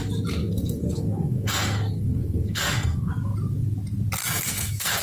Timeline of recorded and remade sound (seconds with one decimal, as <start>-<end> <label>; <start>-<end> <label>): 0.0-0.4 recorded; 0.4-3.1 remade; 3.1-4.2 recorded; 4.2-5.0 remade